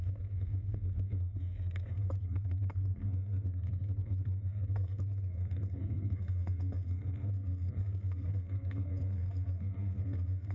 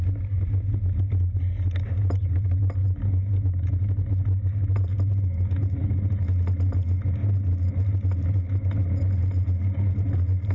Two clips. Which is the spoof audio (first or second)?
first